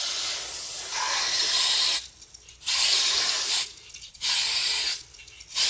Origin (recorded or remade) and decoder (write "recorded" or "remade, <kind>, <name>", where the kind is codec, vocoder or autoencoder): recorded